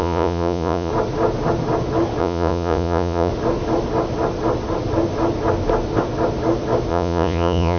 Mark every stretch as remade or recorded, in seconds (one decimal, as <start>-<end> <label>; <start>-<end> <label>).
0.0-0.9 remade; 0.9-2.2 recorded; 2.2-3.3 remade; 3.3-6.9 recorded; 6.9-7.8 remade